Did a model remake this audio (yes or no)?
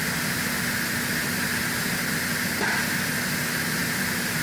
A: no